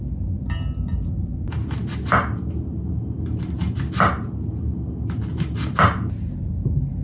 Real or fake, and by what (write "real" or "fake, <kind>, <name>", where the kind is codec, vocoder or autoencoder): real